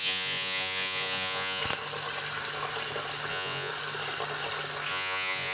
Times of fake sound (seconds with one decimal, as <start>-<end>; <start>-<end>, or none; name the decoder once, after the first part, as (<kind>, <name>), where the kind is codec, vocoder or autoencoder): 0.0-1.6 (vocoder, Vocos); 3.3-3.7; 4.9-5.5